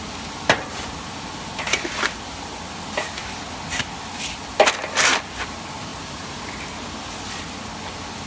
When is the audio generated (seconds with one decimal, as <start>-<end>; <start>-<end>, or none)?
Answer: none